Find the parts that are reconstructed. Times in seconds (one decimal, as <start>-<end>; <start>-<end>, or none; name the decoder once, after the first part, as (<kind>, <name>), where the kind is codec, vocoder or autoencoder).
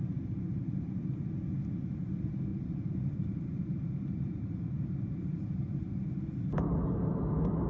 2.5-6.1 (vocoder, BigVGAN v2)